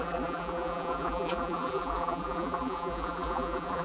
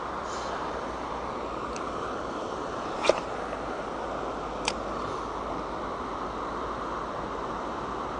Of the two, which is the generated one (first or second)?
first